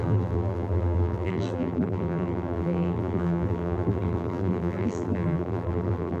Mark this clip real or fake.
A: fake